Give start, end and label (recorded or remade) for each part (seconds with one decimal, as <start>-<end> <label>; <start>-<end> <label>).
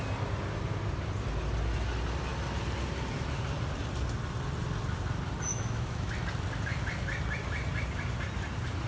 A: 0.0-5.5 recorded; 5.5-6.1 remade; 6.1-8.9 recorded